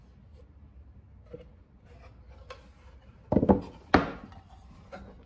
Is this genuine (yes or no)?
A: yes